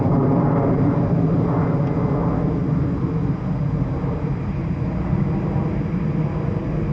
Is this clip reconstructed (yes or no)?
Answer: no